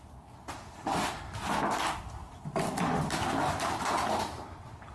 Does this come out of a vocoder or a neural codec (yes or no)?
no